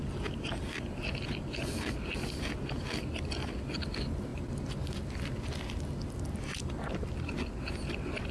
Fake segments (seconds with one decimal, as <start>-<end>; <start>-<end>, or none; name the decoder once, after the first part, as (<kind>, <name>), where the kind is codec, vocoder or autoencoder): none